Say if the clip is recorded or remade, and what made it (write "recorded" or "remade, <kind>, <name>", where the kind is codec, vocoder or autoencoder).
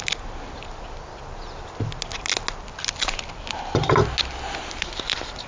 recorded